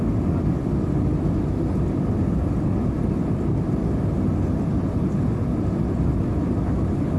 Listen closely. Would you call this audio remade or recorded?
recorded